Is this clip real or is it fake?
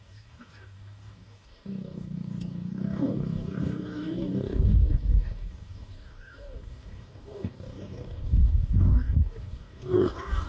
fake